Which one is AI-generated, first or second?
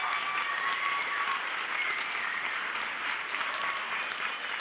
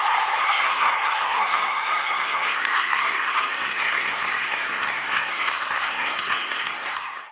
second